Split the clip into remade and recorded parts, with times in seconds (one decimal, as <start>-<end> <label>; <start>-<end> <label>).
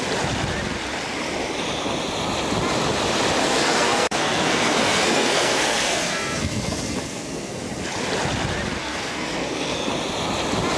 0.0-3.4 recorded; 3.4-7.6 remade; 7.6-8.8 recorded; 8.8-9.9 remade; 9.9-10.8 recorded